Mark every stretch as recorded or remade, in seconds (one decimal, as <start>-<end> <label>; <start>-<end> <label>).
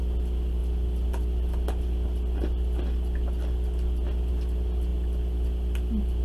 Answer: 0.0-4.9 recorded; 4.9-6.2 remade